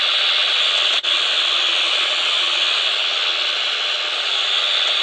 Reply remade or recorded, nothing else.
remade